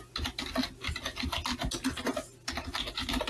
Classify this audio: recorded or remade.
recorded